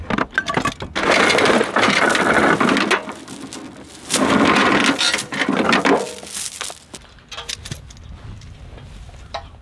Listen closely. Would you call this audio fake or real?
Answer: real